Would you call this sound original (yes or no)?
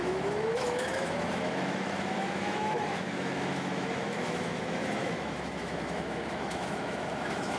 no